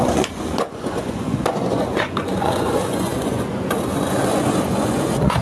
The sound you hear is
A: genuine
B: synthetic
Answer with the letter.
B